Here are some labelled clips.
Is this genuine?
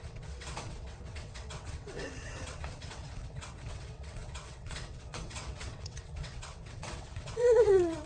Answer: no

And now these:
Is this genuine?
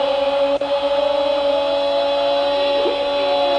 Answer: yes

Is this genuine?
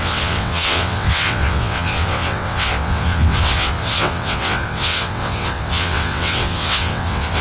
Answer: no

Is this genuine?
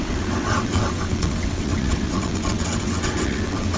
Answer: no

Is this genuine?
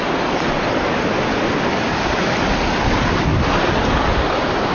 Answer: yes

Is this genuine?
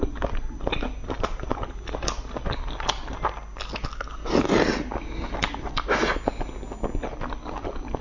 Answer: yes